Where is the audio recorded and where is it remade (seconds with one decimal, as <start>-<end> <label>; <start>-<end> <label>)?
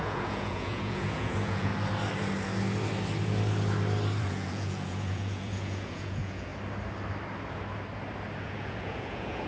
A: 0.0-1.7 remade; 1.7-4.2 recorded; 4.2-6.5 remade; 6.5-8.4 recorded; 8.4-9.5 remade